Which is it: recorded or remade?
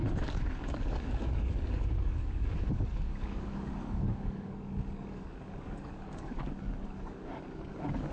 remade